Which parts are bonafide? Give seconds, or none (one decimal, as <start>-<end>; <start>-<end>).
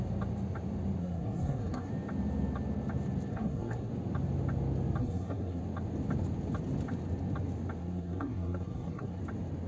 0.0-1.0; 1.9-3.3; 3.9-5.0; 5.6-7.8; 9.2-9.7